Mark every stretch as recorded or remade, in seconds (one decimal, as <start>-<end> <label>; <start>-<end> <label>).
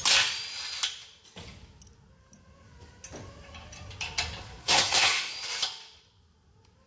0.0-4.6 recorded; 4.6-5.3 remade; 5.3-6.9 recorded